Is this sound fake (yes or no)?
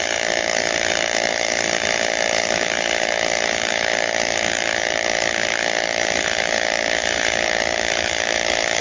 yes